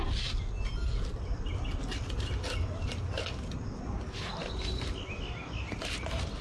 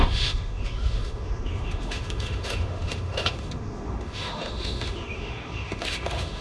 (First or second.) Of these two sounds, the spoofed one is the second